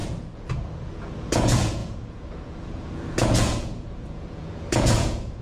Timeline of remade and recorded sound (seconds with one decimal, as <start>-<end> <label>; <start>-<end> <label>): 0.0-5.4 remade